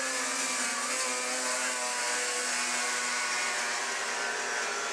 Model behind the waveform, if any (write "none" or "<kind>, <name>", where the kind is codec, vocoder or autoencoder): none